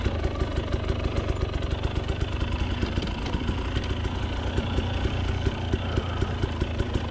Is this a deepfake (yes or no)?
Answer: no